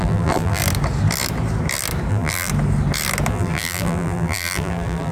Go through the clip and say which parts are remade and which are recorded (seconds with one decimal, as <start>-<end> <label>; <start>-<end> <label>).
0.0-0.6 remade; 0.6-2.1 recorded; 2.1-2.5 remade; 2.5-3.3 recorded; 3.3-5.1 remade